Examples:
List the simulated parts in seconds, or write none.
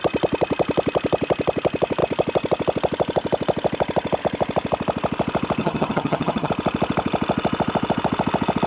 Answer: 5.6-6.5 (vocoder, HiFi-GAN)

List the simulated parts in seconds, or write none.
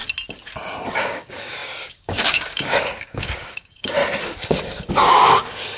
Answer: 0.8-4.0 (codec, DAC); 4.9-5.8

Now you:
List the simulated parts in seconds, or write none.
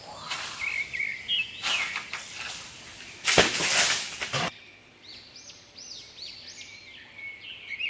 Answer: none